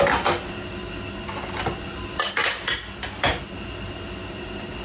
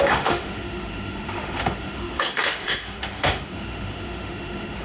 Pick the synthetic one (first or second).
second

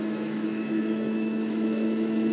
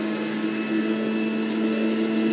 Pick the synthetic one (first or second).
first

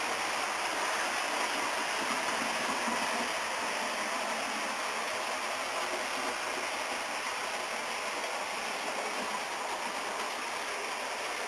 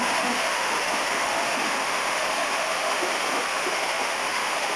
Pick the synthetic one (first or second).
second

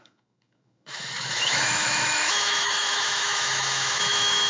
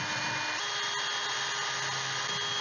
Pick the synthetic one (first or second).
first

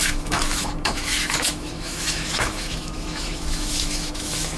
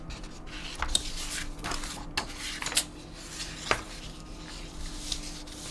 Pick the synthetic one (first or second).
first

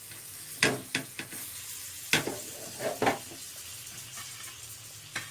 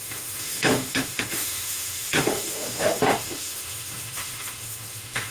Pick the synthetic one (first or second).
second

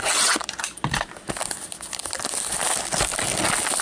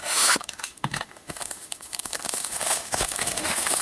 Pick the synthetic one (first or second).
second